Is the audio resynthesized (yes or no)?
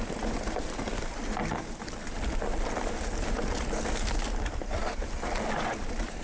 no